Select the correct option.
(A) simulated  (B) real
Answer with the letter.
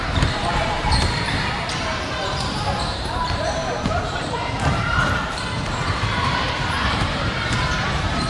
A